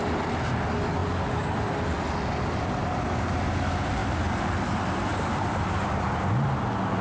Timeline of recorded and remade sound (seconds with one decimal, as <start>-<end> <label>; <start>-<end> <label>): 0.0-7.0 recorded

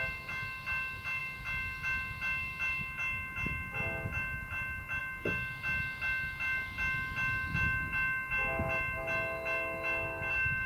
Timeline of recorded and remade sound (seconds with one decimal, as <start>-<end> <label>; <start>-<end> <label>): 0.0-10.7 recorded

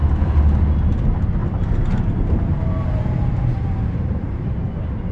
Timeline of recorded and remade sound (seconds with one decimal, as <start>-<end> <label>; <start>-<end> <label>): 0.0-1.4 recorded; 1.4-4.5 remade; 4.5-5.1 recorded

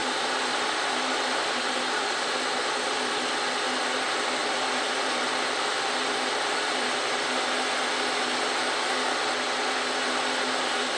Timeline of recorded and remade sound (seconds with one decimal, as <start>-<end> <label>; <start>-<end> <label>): 0.0-3.1 remade; 3.1-4.4 recorded; 4.4-7.2 remade; 7.2-11.0 recorded

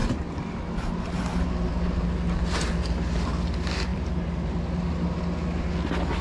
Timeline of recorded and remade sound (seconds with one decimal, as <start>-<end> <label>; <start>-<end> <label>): 0.0-3.9 recorded; 3.9-4.6 remade; 4.6-6.2 recorded

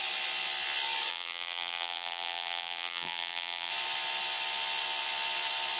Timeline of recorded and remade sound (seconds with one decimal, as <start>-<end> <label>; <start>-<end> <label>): 0.0-1.1 recorded; 1.1-3.7 remade; 3.7-5.8 recorded

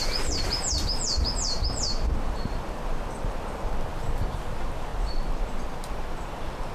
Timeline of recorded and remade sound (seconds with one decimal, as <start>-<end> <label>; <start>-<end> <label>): 0.0-3.7 remade; 3.7-4.9 recorded; 4.9-5.4 remade; 5.4-6.7 recorded

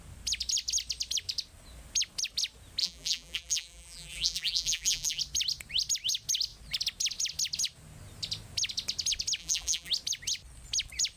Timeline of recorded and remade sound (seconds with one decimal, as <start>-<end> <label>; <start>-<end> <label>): 0.0-2.8 recorded; 2.8-5.2 remade; 5.2-9.4 recorded; 9.4-9.9 remade; 9.9-11.2 recorded